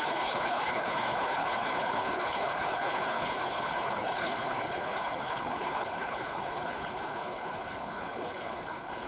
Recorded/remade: remade